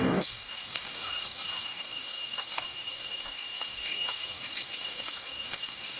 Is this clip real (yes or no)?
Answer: no